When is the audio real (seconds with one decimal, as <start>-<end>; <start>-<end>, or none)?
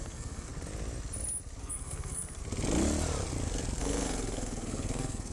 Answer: 0.5-1.6; 2.4-3.8